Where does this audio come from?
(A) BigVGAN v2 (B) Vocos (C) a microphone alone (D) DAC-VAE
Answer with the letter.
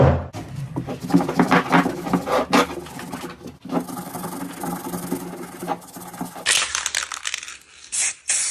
C